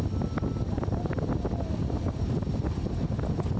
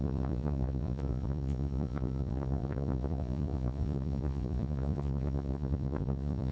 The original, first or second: first